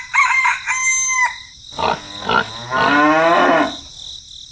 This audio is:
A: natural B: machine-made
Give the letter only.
A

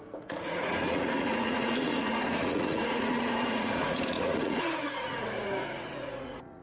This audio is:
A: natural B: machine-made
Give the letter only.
B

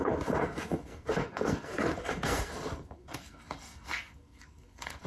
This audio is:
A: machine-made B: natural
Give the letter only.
A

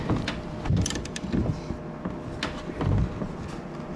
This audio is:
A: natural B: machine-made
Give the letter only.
A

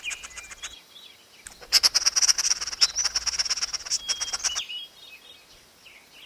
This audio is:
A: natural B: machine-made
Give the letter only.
A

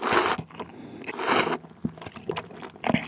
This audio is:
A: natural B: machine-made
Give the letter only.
A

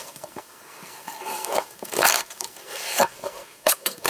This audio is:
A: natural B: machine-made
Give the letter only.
B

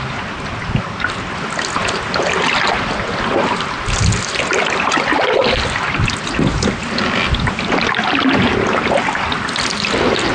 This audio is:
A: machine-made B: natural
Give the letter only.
B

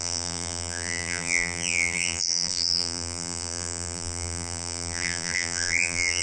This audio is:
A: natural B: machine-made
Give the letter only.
B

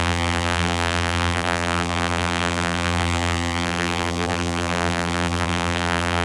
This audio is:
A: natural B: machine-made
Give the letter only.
B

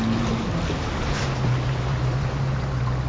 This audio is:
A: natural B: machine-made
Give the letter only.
A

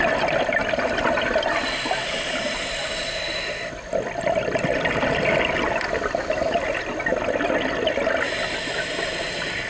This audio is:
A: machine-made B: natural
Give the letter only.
B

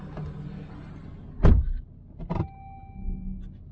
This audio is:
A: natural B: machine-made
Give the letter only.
A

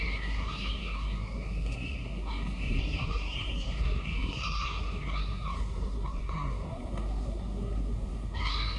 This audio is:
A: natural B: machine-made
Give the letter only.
B